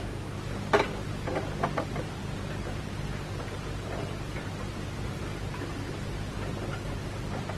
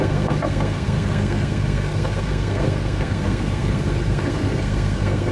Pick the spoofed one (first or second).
second